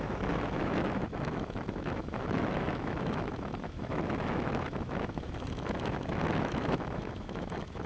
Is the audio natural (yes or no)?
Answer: no